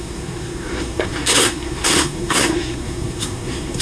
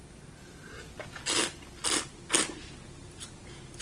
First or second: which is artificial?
first